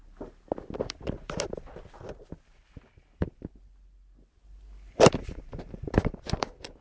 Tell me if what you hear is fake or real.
fake